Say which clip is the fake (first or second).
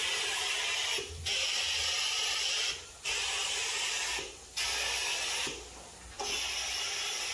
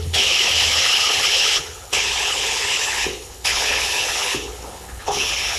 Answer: second